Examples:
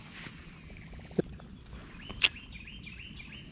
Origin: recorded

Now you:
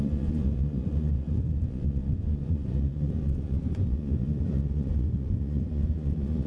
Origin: remade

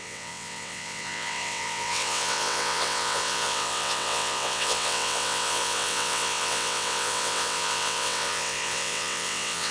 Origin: remade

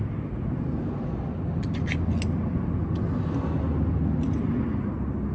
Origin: recorded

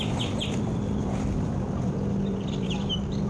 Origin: recorded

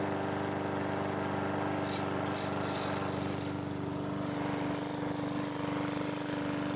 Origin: recorded